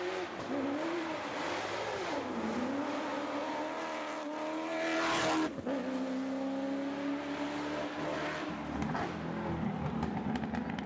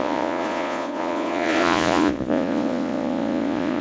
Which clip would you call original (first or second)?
first